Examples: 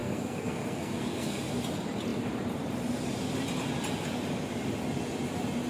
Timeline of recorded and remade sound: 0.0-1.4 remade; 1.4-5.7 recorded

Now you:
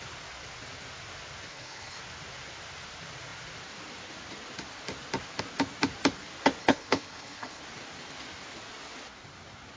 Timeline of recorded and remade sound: 0.0-1.5 recorded; 1.5-2.0 remade; 2.0-6.6 recorded; 6.6-7.6 remade; 7.6-9.8 recorded